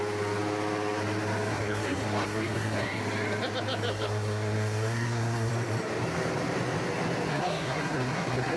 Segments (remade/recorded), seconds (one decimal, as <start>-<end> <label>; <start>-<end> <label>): 0.0-1.5 recorded; 1.5-3.0 remade; 3.0-3.9 recorded; 3.9-5.5 remade; 5.5-7.3 recorded; 7.3-8.6 remade